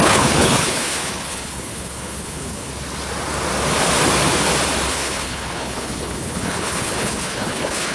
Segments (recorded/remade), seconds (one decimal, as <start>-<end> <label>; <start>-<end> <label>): 0.0-2.7 remade; 2.7-4.9 recorded; 4.9-7.9 remade